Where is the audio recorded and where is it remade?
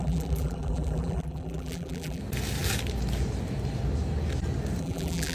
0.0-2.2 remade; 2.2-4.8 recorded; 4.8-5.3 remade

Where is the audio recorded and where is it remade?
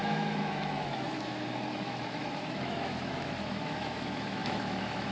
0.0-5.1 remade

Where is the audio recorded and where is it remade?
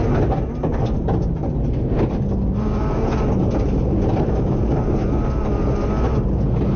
0.0-6.8 recorded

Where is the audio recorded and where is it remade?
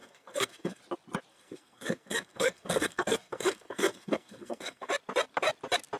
0.0-0.8 remade; 0.8-1.3 recorded; 1.3-4.9 remade; 4.9-6.0 recorded